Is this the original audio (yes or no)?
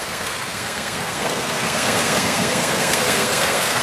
no